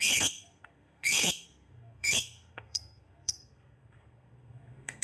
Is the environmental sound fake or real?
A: fake